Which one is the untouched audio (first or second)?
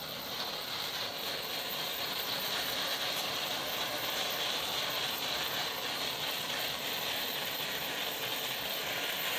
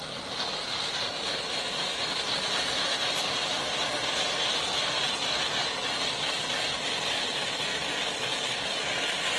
second